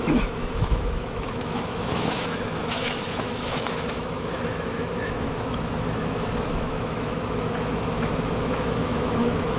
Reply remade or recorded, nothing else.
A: remade